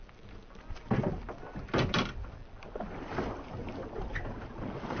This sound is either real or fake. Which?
real